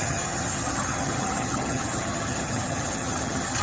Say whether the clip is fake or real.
fake